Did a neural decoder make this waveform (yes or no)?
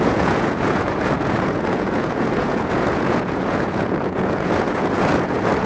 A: yes